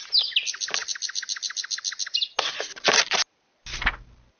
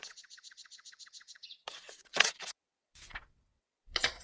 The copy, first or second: second